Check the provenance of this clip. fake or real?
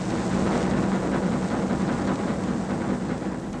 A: real